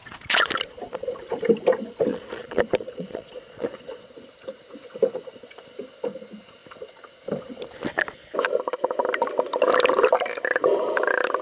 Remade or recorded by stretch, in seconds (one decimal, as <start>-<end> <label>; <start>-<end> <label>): 0.0-0.5 remade; 0.5-2.1 recorded; 2.1-4.1 remade; 4.1-11.4 recorded